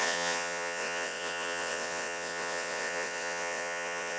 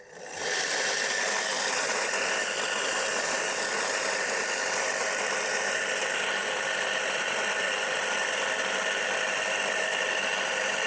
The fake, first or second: first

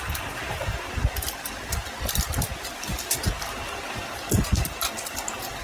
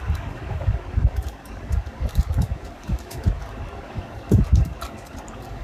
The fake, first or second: second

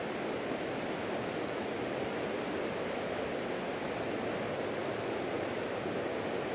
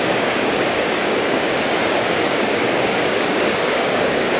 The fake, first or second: second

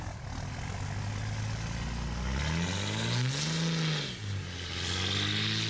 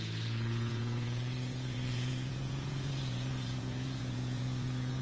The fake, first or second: second